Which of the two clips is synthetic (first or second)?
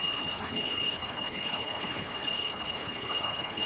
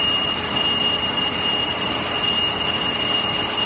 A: first